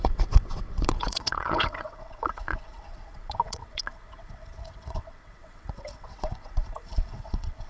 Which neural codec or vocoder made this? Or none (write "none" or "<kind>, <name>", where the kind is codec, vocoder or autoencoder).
vocoder, WaveNeXt